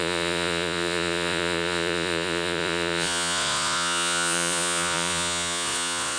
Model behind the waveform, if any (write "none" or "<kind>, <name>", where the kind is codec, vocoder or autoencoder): vocoder, Vocos